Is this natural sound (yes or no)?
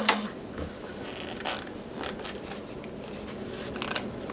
yes